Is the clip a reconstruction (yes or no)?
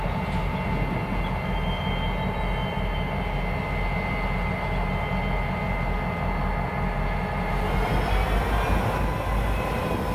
no